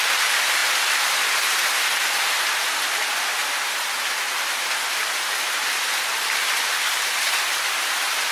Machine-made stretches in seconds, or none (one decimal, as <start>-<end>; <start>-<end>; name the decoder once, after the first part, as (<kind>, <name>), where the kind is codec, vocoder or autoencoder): none